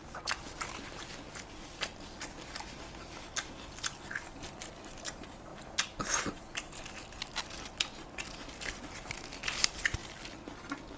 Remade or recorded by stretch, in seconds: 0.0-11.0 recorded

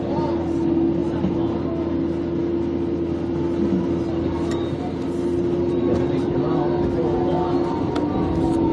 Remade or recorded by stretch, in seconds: 0.0-8.7 recorded

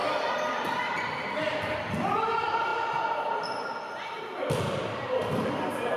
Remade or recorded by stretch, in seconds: 0.0-1.4 recorded; 1.4-2.7 remade; 2.7-5.5 recorded; 5.5-6.0 remade

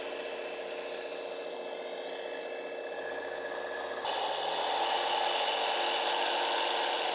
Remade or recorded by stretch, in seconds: 0.0-7.1 recorded

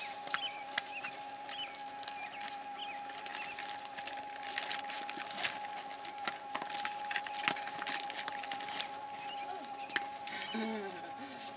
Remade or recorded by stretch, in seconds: 0.0-11.6 recorded

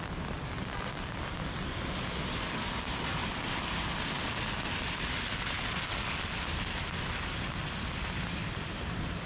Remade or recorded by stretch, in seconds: 0.0-7.6 recorded; 7.6-9.3 remade

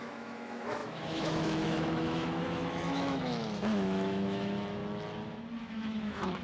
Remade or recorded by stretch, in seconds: 0.0-4.8 remade; 4.8-5.6 recorded; 5.6-6.4 remade